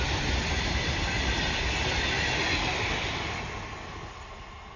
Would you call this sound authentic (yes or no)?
yes